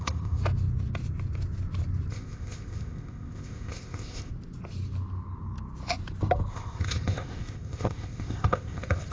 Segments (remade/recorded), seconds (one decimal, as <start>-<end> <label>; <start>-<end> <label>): 0.0-0.4 remade; 0.4-2.1 recorded; 2.1-4.3 remade; 4.3-6.5 recorded; 6.5-9.1 remade